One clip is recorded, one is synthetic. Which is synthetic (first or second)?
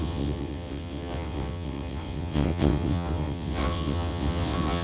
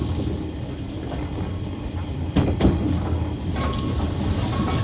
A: first